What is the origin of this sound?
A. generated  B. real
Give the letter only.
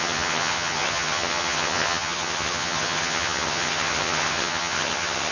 A